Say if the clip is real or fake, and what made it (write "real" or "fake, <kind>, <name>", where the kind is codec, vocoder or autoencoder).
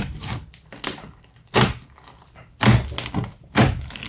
real